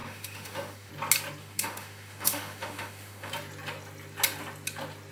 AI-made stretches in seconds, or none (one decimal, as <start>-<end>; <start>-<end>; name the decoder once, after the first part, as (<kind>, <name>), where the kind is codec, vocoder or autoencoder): 0.0-0.9 (autoencoder, DAC-VAE); 1.4-3.3